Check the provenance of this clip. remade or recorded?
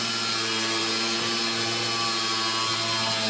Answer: recorded